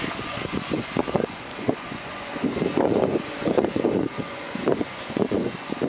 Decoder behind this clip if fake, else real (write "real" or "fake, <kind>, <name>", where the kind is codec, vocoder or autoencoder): fake, vocoder, Vocos